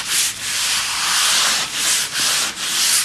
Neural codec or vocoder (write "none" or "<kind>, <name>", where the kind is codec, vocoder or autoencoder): none